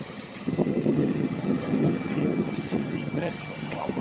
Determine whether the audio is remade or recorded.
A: remade